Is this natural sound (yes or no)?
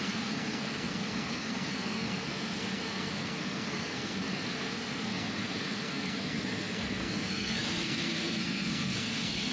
no